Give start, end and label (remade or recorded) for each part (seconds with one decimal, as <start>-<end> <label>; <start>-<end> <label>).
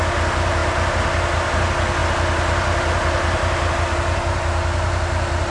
0.0-5.5 recorded